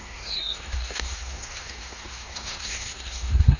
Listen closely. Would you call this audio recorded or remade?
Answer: remade